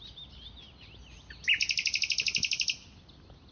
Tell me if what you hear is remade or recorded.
recorded